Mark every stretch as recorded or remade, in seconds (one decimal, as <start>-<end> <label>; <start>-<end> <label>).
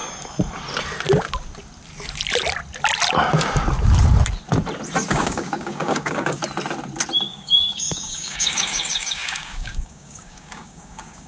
0.0-5.1 recorded; 5.1-6.4 remade; 6.4-7.2 recorded; 7.2-11.3 remade